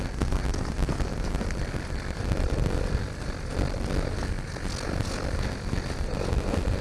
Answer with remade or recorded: recorded